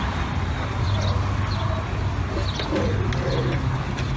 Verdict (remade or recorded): recorded